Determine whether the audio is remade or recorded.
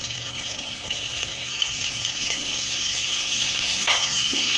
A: remade